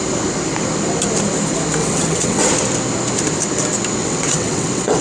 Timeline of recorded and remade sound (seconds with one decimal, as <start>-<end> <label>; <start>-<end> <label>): 0.0-1.8 recorded; 1.8-2.5 remade; 2.5-4.0 recorded; 4.0-5.0 remade